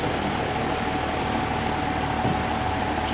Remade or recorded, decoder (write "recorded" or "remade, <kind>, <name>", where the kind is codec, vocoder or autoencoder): recorded